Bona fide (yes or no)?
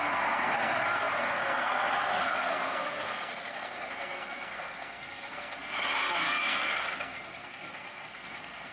no